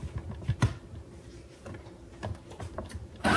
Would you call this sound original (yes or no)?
no